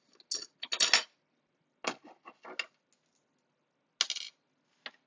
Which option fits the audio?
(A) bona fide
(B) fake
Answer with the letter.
A